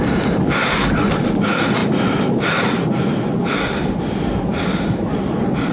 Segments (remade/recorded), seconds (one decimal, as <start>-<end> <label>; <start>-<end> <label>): 0.0-1.8 remade; 1.8-5.2 recorded; 5.2-5.7 remade